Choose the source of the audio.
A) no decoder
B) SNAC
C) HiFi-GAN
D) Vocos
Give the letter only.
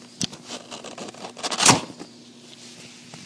A